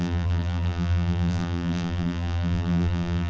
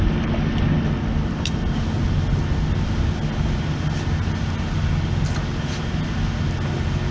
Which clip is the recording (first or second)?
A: second